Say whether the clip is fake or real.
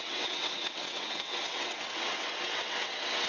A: fake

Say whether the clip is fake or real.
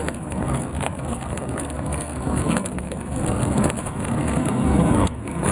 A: fake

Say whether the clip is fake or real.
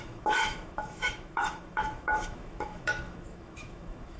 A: fake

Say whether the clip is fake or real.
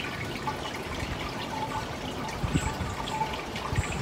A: real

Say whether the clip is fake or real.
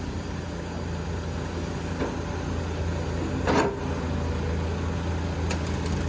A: real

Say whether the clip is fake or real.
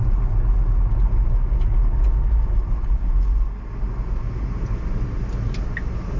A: real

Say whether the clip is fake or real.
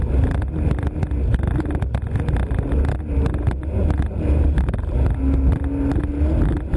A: real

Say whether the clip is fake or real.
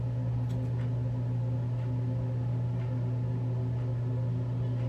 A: real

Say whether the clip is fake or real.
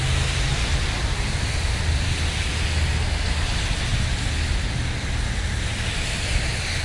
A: real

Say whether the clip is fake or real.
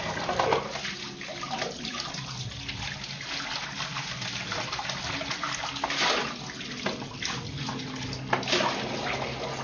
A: real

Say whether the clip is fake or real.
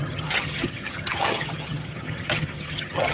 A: fake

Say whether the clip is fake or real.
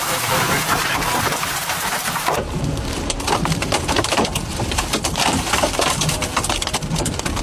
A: fake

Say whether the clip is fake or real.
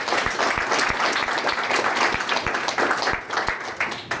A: real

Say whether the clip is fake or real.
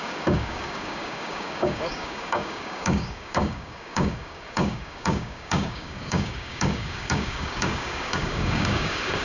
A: fake